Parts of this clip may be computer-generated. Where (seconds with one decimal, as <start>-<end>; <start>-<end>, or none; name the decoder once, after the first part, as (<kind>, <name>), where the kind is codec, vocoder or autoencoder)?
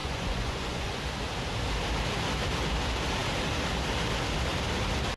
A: 0.0-1.0 (vocoder, Vocos)